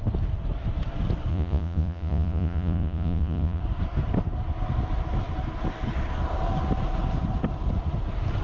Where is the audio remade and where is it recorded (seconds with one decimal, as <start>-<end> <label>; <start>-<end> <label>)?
0.0-1.3 recorded; 1.3-3.6 remade; 3.6-8.4 recorded